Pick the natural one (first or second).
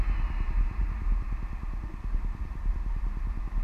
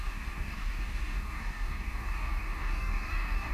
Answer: first